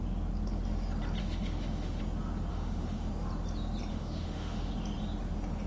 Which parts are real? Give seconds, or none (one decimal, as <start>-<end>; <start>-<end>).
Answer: 0.0-1.2; 2.0-2.5; 3.1-3.9; 4.7-5.7